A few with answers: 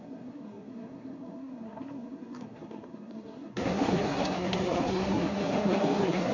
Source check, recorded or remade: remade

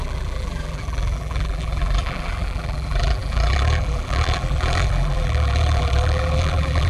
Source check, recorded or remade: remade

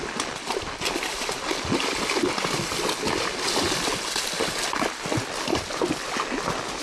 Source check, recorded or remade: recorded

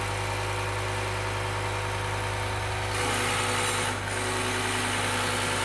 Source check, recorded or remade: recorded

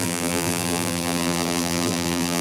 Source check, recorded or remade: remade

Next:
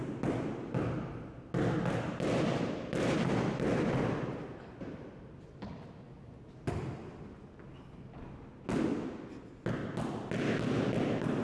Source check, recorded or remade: recorded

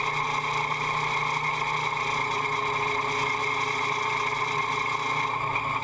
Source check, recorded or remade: recorded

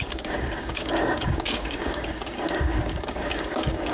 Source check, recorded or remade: remade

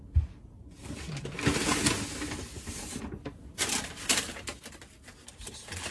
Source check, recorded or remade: recorded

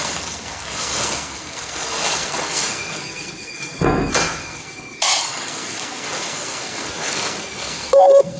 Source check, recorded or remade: remade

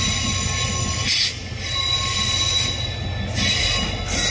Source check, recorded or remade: recorded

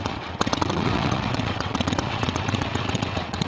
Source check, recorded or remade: remade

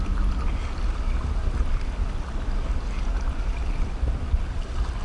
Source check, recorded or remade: recorded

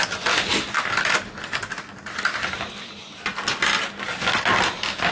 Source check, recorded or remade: recorded